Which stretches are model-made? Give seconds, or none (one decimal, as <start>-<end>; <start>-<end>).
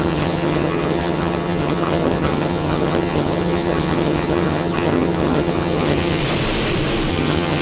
0.0-6.2; 7.1-7.6